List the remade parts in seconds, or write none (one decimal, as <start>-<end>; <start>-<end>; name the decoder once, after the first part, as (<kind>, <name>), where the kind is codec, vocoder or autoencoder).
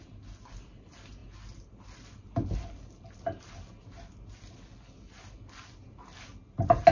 none